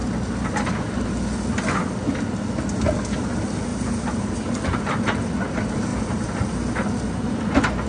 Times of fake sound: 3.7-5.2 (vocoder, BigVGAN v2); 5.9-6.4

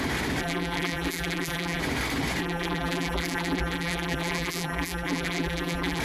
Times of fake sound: 0.4-1.8 (vocoder, BigVGAN v2); 2.4-6.0

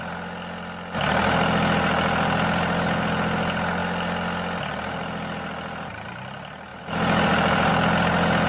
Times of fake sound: 6.7-7.7 (vocoder, BigVGAN v2)